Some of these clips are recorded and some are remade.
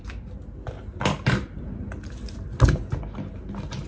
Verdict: recorded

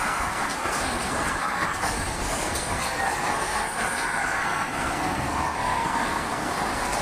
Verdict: remade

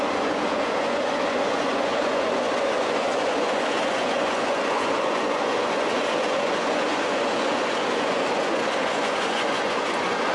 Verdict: remade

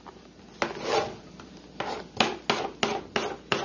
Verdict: recorded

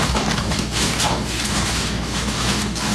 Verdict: remade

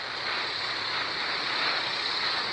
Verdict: recorded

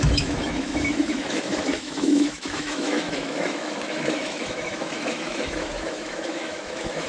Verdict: remade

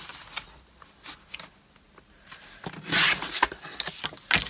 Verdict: recorded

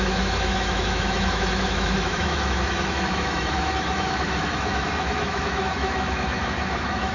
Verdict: remade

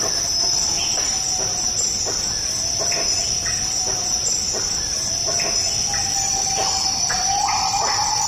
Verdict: recorded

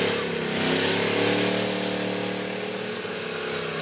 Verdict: recorded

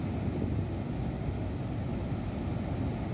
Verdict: recorded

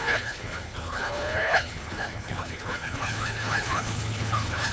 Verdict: remade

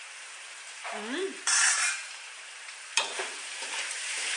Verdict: remade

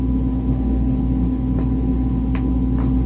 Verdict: recorded